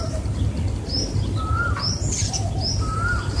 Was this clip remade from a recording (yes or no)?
no